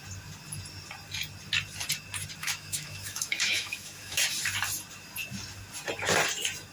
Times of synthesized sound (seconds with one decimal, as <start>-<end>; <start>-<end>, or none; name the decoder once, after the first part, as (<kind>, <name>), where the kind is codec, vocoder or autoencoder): 2.4-4.2 (autoencoder, DAC-VAE)